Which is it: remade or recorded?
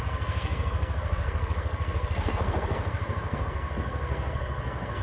remade